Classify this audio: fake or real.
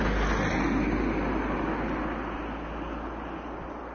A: real